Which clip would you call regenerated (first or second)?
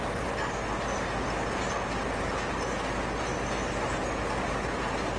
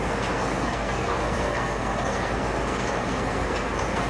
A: second